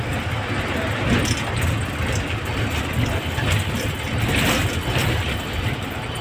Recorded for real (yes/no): yes